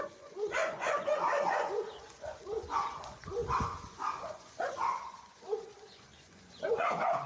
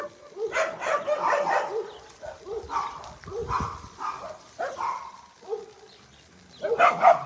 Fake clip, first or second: first